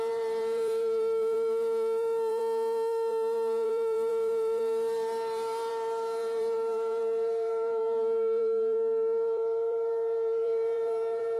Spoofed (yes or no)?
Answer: yes